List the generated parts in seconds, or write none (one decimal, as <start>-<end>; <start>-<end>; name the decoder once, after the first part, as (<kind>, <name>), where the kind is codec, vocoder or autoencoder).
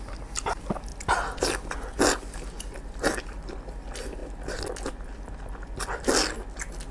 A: none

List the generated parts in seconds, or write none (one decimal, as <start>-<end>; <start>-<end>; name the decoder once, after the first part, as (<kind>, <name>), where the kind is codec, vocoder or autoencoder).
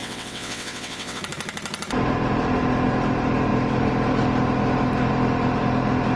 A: 0.0-1.2 (vocoder, WaveNeXt)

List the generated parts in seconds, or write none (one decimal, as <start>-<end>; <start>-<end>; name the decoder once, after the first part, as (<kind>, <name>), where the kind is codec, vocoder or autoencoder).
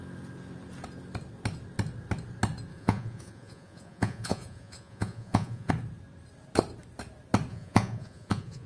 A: 2.7-5.7 (vocoder, Vocos); 7.5-8.7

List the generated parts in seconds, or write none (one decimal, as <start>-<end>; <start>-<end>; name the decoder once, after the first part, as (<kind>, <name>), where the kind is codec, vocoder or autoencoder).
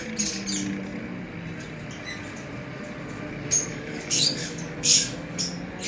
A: 3.7-5.4 (codec, DAC)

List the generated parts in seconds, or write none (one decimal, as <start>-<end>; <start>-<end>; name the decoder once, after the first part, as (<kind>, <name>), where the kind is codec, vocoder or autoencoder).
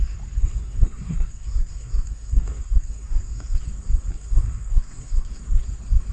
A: 0.4-3.6 (codec, SNAC); 4.1-5.4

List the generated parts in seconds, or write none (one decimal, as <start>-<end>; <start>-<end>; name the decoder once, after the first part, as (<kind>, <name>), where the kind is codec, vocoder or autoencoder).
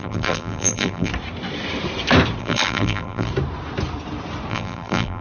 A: 0.0-1.1 (vocoder, BigVGAN v2); 2.4-3.3; 4.5-5.2